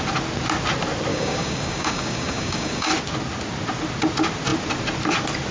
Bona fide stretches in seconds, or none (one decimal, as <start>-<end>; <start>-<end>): 0.0-1.1; 2.9-5.5